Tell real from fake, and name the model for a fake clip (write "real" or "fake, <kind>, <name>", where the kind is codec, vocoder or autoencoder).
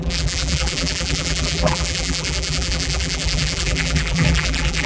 fake, vocoder, BigVGAN v2